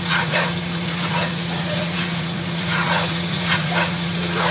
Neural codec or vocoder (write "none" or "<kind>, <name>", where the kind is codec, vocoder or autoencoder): vocoder, Vocos